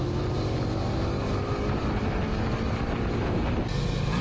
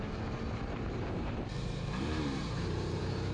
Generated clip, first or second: second